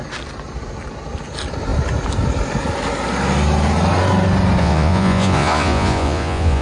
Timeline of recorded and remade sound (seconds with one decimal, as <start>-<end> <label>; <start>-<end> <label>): 0.0-4.6 recorded; 4.6-6.6 remade

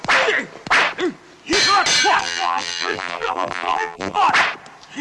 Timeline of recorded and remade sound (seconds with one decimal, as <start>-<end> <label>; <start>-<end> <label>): 0.0-2.2 recorded; 2.2-4.2 remade; 4.2-5.0 recorded